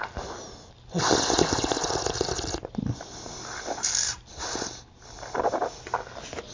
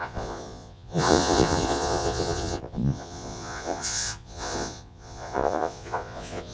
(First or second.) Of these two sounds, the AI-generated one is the second